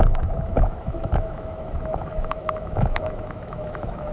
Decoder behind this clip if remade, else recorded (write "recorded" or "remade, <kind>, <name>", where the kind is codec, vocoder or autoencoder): remade, autoencoder, DAC-VAE